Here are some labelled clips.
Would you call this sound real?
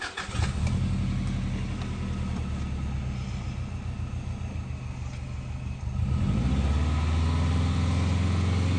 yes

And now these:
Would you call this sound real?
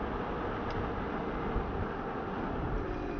yes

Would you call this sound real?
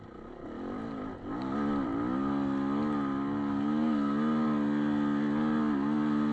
yes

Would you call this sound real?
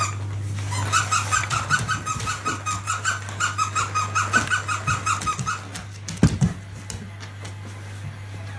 yes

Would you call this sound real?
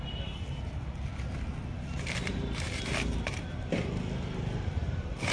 yes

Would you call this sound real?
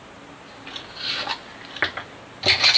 yes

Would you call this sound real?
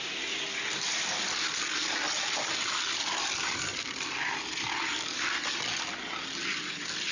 yes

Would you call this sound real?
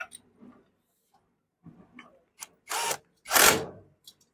yes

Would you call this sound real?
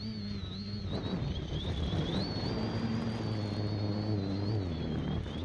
yes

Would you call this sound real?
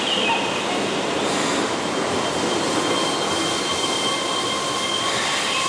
yes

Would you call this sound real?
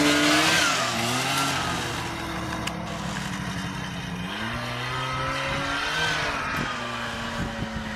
yes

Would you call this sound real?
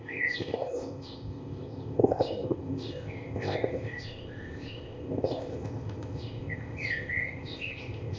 no